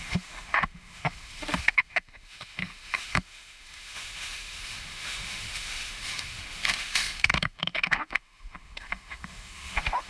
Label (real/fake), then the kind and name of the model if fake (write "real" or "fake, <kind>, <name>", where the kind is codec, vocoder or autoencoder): fake, autoencoder, DAC-VAE